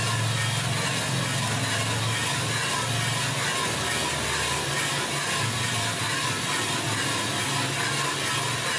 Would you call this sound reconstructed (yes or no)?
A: no